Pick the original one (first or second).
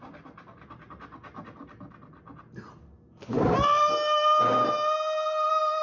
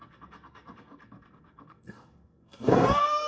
first